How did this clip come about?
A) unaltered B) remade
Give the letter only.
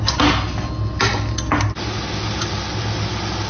A